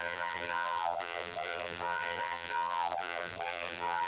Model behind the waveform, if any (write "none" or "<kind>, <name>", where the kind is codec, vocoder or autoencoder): vocoder, BigVGAN v2